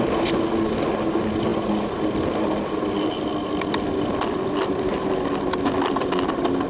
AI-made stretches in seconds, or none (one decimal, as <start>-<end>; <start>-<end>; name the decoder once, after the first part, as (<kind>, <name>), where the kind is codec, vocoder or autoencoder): none